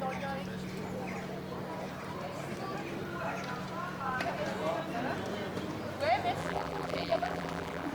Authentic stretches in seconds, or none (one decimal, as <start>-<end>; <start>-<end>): 0.0-6.4